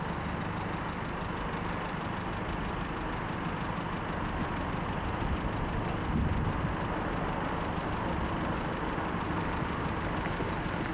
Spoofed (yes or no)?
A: no